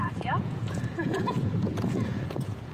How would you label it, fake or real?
fake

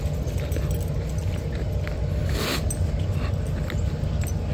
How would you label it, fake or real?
real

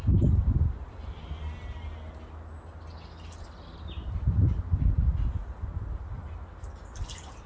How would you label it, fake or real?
real